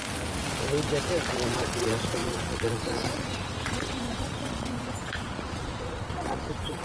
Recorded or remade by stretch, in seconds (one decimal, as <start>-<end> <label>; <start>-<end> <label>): 0.0-1.5 recorded; 1.5-6.8 remade